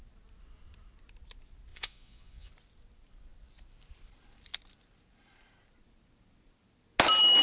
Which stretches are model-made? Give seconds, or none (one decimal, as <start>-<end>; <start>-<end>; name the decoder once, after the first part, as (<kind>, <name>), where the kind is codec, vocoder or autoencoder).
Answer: 1.7-2.5 (vocoder, Vocos)